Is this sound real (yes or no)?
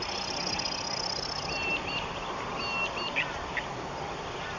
yes